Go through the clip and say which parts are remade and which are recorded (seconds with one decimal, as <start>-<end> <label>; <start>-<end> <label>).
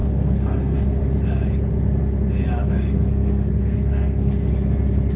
0.0-1.0 remade; 1.0-2.6 recorded; 2.6-4.5 remade; 4.5-5.2 recorded